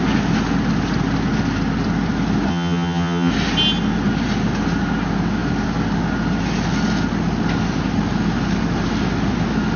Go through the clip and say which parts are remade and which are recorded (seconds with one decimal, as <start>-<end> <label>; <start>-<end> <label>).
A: 0.0-2.5 recorded; 2.5-3.3 remade; 3.3-9.8 recorded